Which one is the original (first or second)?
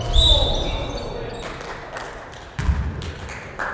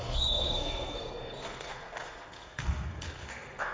first